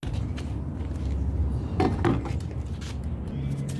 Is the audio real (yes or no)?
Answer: yes